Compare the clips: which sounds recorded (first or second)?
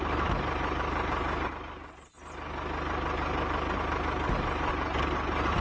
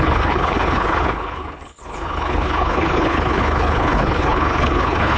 first